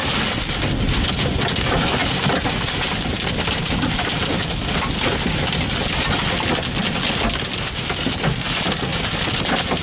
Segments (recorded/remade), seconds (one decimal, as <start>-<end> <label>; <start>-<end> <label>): 0.0-1.1 remade; 1.1-2.0 recorded; 2.0-4.9 remade; 4.9-9.8 recorded